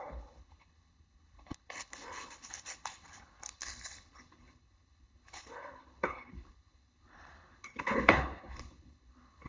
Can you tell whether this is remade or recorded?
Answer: remade